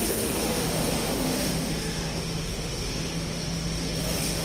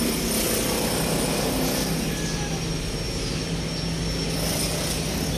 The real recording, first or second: second